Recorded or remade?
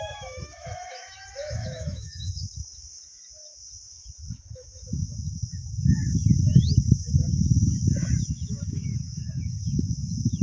remade